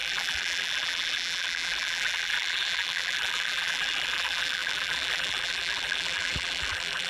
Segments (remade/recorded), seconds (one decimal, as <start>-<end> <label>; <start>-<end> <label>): 0.0-7.1 remade